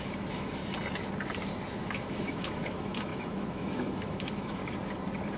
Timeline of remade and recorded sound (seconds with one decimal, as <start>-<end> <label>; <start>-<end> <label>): 0.0-0.6 remade; 0.6-1.8 recorded; 1.8-4.6 remade; 4.6-5.4 recorded